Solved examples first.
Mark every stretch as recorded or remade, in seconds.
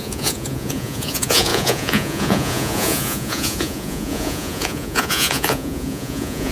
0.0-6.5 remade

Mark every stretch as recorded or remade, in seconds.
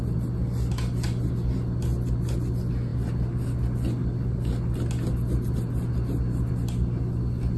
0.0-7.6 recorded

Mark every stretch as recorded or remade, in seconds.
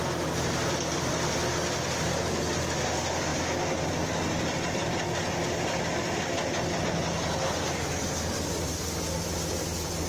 0.0-10.1 recorded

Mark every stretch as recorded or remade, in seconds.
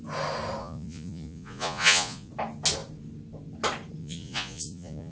0.0-0.6 recorded; 0.6-2.3 remade; 2.3-4.0 recorded; 4.0-5.1 remade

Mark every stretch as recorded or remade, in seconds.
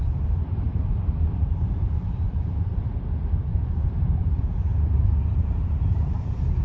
0.0-4.7 remade; 4.7-5.3 recorded; 5.3-6.6 remade